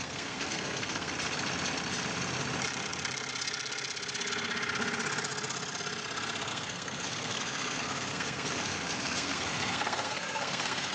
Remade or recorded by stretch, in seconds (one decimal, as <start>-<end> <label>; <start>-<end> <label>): 0.0-1.1 remade; 1.1-6.5 recorded; 6.5-10.9 remade